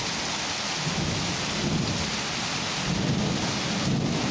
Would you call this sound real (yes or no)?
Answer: yes